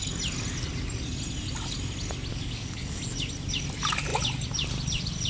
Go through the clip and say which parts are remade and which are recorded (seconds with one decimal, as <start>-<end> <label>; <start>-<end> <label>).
0.0-2.3 recorded; 2.3-3.0 remade; 3.0-5.3 recorded